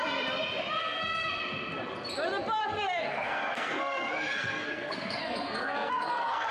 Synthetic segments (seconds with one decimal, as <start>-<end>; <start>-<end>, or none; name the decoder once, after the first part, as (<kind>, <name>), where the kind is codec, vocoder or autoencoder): 0.8-1.4 (codec, SNAC); 2.6-6.5